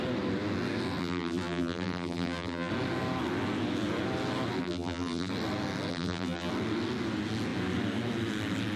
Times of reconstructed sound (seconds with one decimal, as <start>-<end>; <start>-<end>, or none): 1.0-2.7; 4.6-5.3; 5.9-6.5